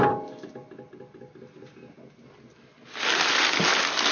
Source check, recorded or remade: recorded